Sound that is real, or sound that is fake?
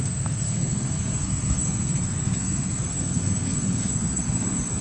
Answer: fake